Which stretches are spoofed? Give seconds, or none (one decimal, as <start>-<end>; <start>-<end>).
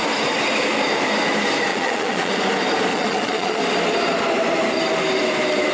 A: 1.7-2.4; 2.9-3.6